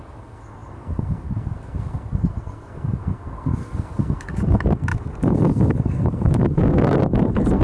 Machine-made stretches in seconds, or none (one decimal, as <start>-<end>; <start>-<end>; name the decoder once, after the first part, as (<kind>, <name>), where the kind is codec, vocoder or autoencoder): 0.0-7.6 (codec, SNAC)